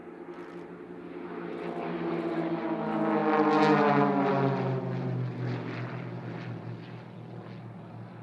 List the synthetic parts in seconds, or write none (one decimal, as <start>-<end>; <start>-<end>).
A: none